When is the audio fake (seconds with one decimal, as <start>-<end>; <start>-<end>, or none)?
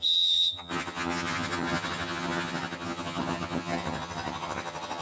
0.0-5.0